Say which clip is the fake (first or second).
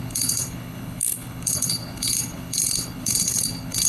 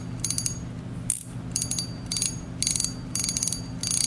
first